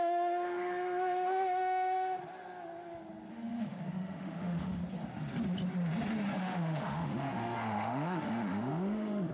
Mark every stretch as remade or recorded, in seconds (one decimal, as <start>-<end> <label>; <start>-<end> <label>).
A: 0.0-2.2 remade; 2.2-3.3 recorded; 3.3-4.8 remade; 4.8-6.4 recorded; 6.4-9.3 remade